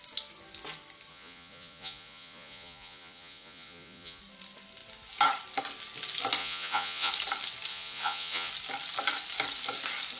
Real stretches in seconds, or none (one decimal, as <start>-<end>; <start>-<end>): 0.0-1.1; 4.2-6.4; 7.1-7.7; 8.5-10.2